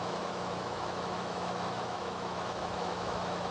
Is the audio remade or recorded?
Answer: remade